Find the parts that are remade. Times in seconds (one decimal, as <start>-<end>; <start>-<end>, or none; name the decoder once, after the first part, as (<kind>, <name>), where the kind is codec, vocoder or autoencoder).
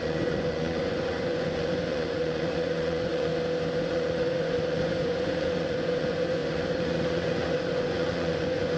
0.0-3.3 (vocoder, Vocos); 3.8-8.8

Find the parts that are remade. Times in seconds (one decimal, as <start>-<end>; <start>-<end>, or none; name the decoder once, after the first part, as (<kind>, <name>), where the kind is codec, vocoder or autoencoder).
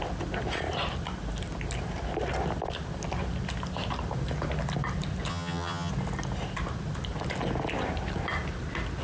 5.3-5.9 (vocoder, HiFi-GAN)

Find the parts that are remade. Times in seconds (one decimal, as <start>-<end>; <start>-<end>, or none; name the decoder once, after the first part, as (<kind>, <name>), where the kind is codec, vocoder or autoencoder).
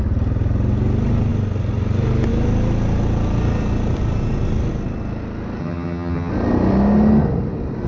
5.6-6.3 (vocoder, HiFi-GAN)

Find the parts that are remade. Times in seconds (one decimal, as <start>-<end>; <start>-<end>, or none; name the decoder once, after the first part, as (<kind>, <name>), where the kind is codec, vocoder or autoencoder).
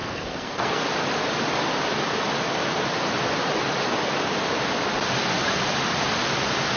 0.0-0.8 (codec, SNAC)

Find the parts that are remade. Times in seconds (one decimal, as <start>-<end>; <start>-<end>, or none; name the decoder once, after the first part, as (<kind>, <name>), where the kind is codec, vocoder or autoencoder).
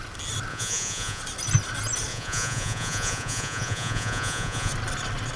0.5-1.2 (vocoder, Vocos); 2.1-4.7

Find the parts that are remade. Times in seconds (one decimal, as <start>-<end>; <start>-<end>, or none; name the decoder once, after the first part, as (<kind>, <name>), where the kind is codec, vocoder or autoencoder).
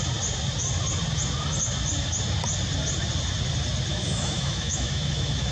3.9-5.5 (autoencoder, DAC-VAE)